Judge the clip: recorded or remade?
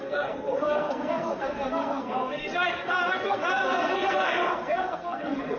remade